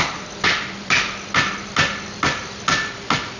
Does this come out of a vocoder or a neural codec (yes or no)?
no